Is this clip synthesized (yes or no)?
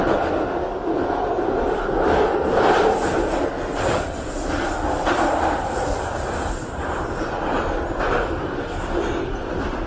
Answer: yes